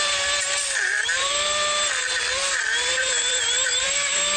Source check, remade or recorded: remade